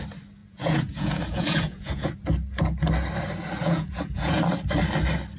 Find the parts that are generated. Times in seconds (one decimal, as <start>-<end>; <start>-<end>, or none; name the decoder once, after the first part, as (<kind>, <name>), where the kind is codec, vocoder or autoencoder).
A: 0.4-2.1 (vocoder, Vocos); 3.6-4.4